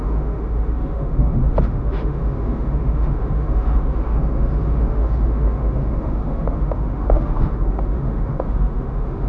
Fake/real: fake